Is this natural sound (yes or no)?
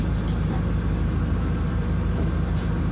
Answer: yes